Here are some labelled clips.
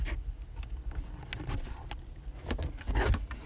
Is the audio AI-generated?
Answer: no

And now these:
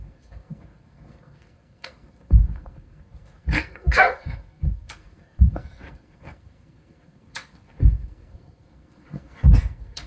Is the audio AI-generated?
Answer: yes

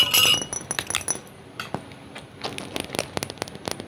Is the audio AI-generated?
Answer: no